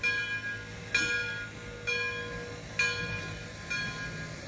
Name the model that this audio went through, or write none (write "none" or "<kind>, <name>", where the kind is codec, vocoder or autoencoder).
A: none